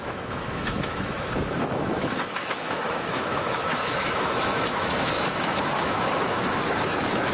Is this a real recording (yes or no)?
no